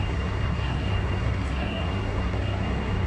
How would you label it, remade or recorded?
remade